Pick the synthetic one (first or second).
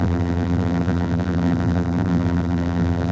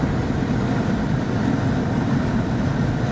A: first